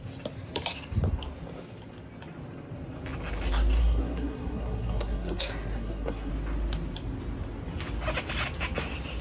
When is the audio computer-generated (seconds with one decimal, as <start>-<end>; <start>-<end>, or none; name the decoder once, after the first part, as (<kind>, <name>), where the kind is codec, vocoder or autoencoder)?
3.8-6.3 (codec, SNAC)